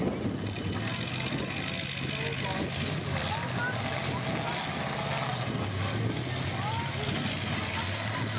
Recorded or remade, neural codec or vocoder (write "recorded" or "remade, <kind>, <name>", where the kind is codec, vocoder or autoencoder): recorded